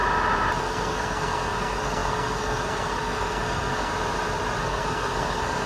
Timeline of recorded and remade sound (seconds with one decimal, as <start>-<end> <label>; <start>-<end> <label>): 0.0-0.6 recorded; 0.6-3.9 remade; 3.9-4.6 recorded; 4.6-5.7 remade